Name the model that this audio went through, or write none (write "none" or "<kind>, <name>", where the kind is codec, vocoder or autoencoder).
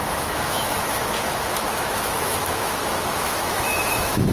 autoencoder, DAC-VAE